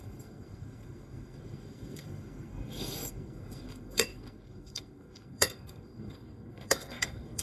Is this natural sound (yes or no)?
no